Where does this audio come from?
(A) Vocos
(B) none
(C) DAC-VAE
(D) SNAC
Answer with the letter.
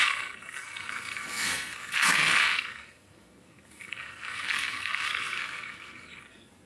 D